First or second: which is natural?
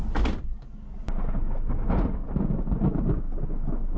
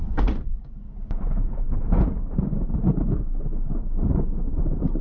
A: first